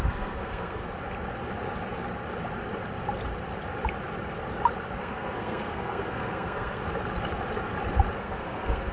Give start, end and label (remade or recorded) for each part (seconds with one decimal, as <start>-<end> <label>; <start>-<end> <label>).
0.0-0.8 remade; 0.8-5.0 recorded; 5.0-6.8 remade; 6.8-8.2 recorded; 8.2-8.9 remade